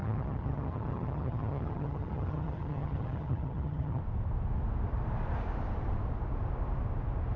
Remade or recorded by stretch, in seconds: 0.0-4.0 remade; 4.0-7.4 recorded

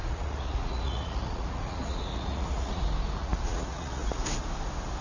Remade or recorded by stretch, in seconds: 0.0-2.8 remade; 2.8-3.2 recorded; 3.2-4.2 remade; 4.2-5.0 recorded

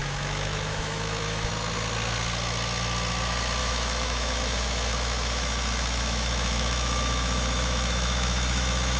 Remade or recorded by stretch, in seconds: 0.0-1.5 remade; 1.5-3.6 recorded; 3.6-9.0 remade

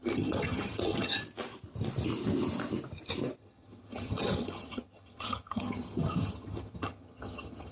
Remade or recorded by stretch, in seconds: 0.0-1.1 remade; 1.1-3.4 recorded; 3.4-7.7 remade

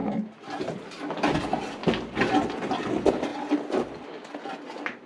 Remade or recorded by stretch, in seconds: 0.0-5.1 recorded